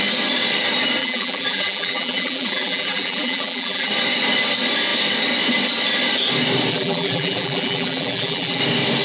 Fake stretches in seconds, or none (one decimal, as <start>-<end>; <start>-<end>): 1.0-3.9; 6.7-8.6